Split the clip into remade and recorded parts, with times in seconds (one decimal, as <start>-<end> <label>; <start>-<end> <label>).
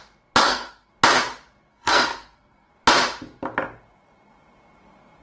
0.0-0.4 recorded; 0.4-0.9 remade; 0.9-1.7 recorded; 1.7-2.7 remade; 2.7-5.2 recorded